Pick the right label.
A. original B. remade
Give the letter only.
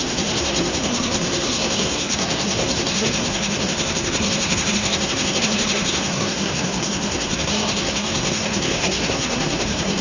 B